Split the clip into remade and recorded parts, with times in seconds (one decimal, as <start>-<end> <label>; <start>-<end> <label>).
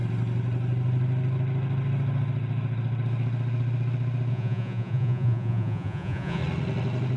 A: 0.0-4.3 recorded; 4.3-6.4 remade; 6.4-7.2 recorded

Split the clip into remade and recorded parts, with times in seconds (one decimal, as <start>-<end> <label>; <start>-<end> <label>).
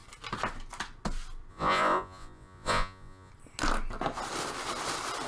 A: 0.0-1.5 recorded; 1.5-3.3 remade; 3.3-5.3 recorded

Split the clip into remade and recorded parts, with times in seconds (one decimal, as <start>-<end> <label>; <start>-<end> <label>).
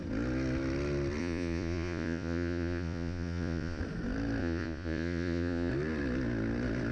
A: 0.0-1.2 recorded; 1.2-3.8 remade; 3.8-4.4 recorded; 4.4-5.7 remade; 5.7-6.9 recorded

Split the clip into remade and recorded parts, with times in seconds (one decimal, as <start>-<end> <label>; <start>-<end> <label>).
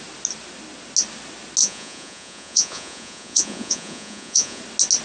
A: 0.0-1.6 recorded; 1.6-4.6 remade; 4.6-5.0 recorded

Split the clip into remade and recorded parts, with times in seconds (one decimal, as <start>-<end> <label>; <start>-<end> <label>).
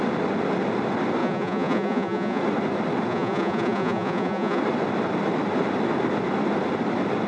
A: 0.0-1.2 recorded; 1.2-2.4 remade; 2.4-3.1 recorded; 3.1-4.6 remade; 4.6-7.3 recorded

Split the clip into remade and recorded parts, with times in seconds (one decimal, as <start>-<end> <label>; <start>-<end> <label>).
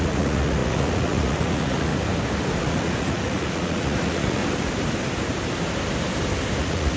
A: 0.0-1.9 remade; 1.9-2.6 recorded; 2.6-4.4 remade; 4.4-6.6 recorded; 6.6-7.0 remade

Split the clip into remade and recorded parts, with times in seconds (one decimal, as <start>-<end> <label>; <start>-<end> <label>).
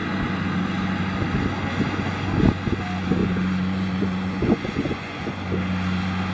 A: 0.0-3.2 recorded; 3.2-5.3 remade; 5.3-6.3 recorded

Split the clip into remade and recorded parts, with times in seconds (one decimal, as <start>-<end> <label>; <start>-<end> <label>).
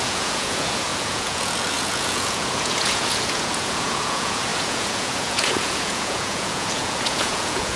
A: 0.0-7.8 remade